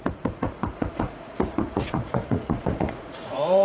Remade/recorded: remade